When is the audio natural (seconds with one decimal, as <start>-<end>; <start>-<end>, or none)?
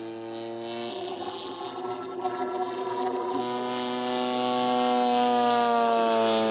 0.0-0.9; 3.4-6.5